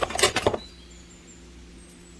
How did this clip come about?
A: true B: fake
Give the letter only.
A